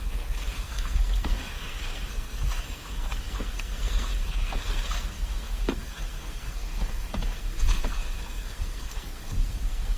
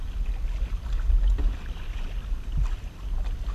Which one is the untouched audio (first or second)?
second